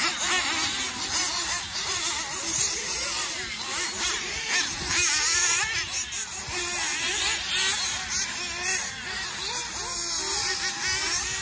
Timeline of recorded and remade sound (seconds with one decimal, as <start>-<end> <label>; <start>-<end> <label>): 0.0-11.4 recorded